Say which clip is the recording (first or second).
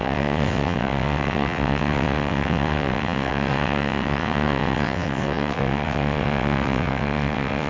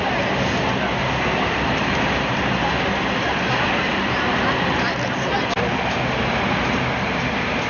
second